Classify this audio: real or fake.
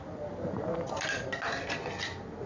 real